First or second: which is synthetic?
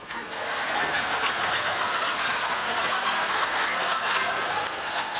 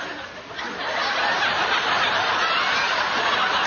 first